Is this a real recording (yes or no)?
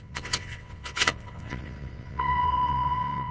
no